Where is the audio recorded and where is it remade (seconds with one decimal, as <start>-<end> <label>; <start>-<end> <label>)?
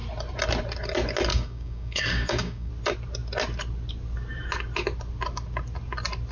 0.0-1.3 recorded; 1.3-2.7 remade; 2.7-6.3 recorded